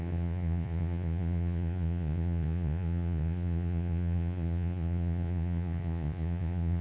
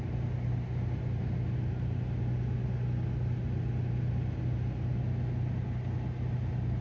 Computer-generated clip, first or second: first